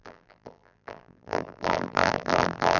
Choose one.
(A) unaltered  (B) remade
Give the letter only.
B